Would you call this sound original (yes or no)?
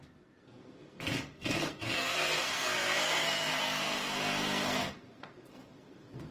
no